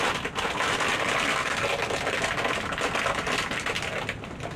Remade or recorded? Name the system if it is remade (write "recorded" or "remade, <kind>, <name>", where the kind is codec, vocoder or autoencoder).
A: recorded